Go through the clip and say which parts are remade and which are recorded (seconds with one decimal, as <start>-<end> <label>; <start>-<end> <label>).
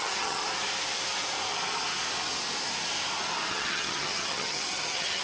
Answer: 0.0-0.4 remade; 0.4-3.5 recorded; 3.5-5.2 remade